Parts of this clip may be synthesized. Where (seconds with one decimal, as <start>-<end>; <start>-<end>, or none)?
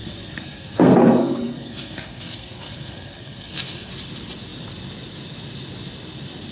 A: 0.0-3.9